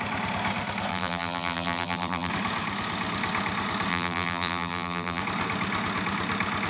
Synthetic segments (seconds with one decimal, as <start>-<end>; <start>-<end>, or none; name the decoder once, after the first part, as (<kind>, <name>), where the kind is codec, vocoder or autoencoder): 0.9-2.3 (vocoder, BigVGAN v2); 3.9-5.2